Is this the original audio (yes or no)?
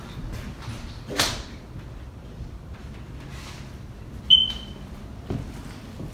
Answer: yes